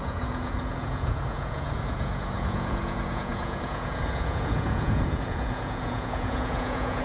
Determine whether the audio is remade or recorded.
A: remade